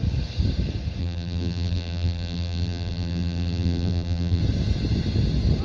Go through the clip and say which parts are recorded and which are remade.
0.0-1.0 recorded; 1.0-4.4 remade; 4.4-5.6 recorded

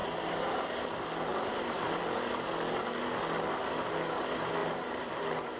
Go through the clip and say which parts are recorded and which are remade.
0.0-0.9 remade; 0.9-1.3 recorded; 1.3-2.0 remade; 2.0-4.6 recorded; 4.6-5.6 remade

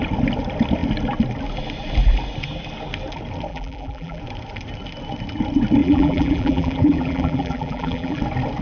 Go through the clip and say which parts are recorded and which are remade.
0.0-3.5 recorded; 3.5-4.2 remade; 4.2-5.8 recorded; 5.8-8.2 remade; 8.2-8.6 recorded

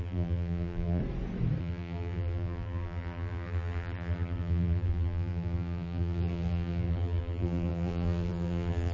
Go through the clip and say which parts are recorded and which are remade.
0.0-1.0 remade; 1.0-1.6 recorded; 1.6-8.9 remade

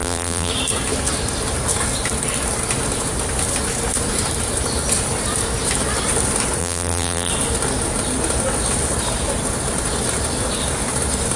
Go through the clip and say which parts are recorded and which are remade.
0.0-0.5 remade; 0.5-6.6 recorded; 6.6-7.3 remade; 7.3-11.4 recorded

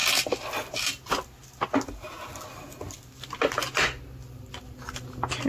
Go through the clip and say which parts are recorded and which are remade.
0.0-5.5 recorded